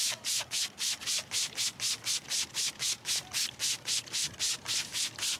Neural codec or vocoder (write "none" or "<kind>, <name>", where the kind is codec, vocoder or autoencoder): none